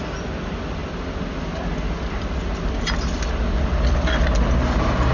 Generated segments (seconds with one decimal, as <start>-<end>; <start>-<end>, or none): none